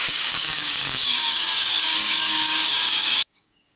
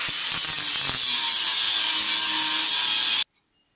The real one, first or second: second